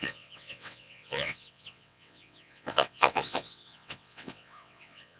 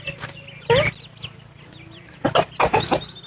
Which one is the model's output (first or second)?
first